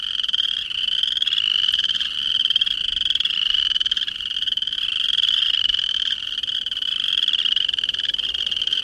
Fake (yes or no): no